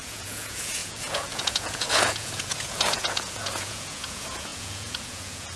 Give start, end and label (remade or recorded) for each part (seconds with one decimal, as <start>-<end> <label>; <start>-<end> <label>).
0.0-5.6 remade